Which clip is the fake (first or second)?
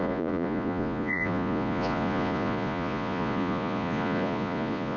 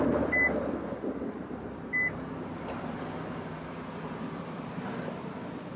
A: first